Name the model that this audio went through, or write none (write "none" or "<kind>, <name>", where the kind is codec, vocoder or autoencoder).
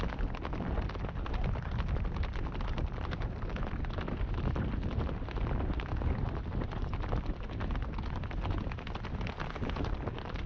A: none